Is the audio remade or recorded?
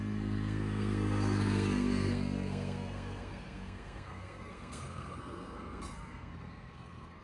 remade